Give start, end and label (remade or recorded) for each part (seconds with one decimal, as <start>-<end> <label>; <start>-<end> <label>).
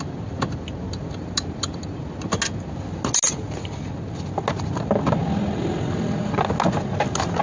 0.0-7.4 recorded